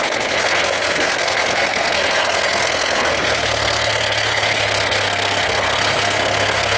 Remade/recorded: remade